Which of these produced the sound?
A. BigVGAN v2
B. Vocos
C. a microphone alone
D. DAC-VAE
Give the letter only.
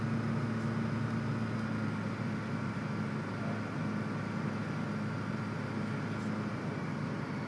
C